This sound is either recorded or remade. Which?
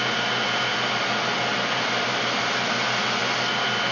remade